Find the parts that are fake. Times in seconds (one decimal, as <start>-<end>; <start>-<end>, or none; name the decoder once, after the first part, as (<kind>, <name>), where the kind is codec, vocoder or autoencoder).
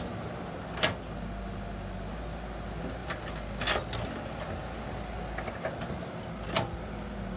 none